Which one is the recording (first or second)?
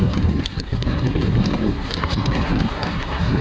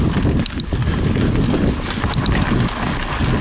second